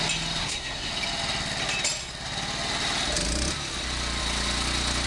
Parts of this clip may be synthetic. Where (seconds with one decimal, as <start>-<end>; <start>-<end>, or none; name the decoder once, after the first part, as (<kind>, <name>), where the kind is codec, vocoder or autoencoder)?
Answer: 0.4-0.9 (codec, SNAC)